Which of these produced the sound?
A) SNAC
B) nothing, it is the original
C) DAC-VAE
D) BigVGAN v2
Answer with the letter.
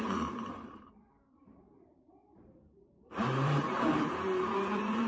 D